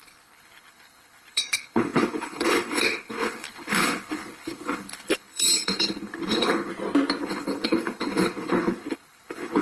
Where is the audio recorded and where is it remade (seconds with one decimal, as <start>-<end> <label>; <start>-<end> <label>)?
0.0-6.7 remade; 6.7-7.2 recorded; 7.2-9.6 remade